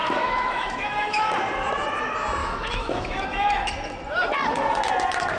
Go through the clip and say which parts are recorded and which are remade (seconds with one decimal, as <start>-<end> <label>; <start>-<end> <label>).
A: 0.0-1.3 remade; 1.3-2.4 recorded; 2.4-3.7 remade; 3.7-5.4 recorded